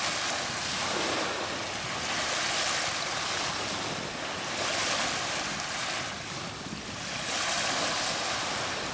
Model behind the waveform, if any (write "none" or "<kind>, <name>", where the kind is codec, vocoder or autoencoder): none